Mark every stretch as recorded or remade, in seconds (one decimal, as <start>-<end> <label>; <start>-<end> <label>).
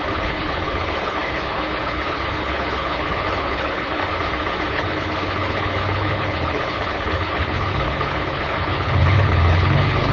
0.0-4.0 remade; 4.0-4.7 recorded; 4.7-10.1 remade